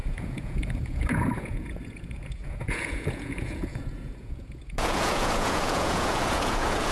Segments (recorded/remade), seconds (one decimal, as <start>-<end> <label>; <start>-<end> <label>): 0.0-6.9 remade